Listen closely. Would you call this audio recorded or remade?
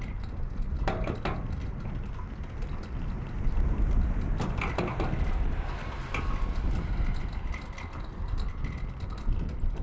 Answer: recorded